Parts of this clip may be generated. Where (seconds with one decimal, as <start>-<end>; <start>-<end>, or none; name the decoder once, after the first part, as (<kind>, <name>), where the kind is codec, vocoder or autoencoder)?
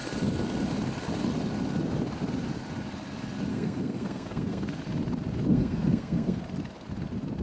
3.5-4.8 (codec, SNAC); 5.5-6.4